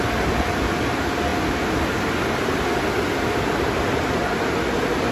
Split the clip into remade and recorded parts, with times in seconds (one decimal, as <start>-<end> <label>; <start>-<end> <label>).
0.0-5.1 recorded